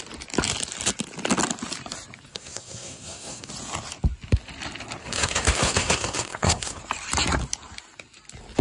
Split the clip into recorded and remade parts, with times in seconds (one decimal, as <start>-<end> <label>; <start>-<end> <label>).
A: 0.0-2.3 recorded; 2.3-3.5 remade; 3.5-5.0 recorded; 5.0-6.8 remade; 6.8-8.6 recorded